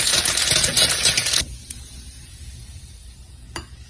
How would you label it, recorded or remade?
remade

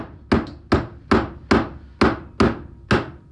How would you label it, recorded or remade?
recorded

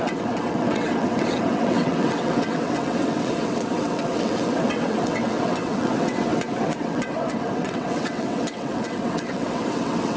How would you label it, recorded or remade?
remade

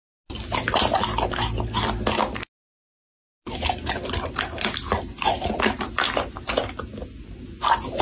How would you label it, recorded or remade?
recorded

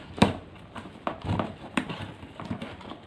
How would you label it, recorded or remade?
remade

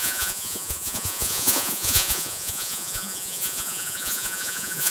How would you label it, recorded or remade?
remade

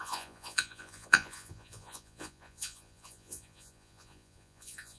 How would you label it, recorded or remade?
remade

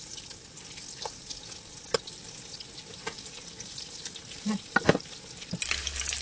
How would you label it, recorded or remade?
recorded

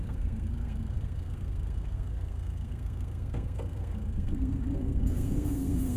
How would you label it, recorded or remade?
remade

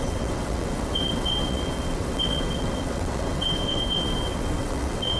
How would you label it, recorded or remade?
remade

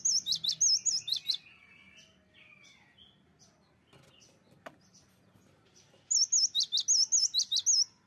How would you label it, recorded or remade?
recorded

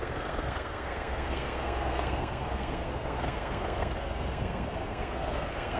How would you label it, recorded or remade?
remade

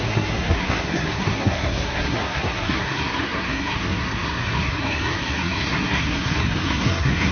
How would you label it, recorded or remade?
remade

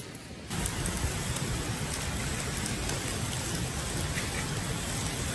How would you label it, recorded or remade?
recorded